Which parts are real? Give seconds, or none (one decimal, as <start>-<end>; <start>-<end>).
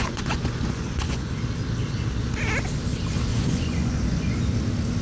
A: 1.3-3.3; 4.4-5.0